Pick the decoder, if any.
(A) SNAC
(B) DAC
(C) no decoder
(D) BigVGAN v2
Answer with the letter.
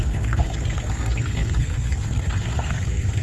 A